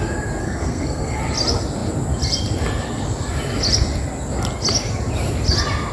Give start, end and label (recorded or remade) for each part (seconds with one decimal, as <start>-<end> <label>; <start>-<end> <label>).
0.0-0.4 recorded; 0.4-1.2 remade; 1.2-5.9 recorded